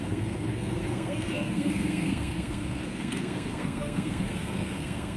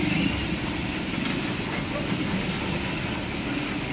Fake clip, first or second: first